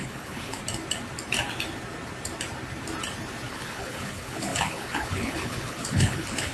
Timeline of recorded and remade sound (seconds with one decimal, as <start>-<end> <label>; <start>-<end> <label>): 0.0-0.6 remade; 0.6-3.5 recorded; 3.5-6.5 remade